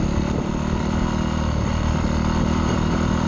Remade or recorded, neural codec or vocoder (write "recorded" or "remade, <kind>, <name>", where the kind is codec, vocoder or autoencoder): remade, vocoder, BigVGAN v2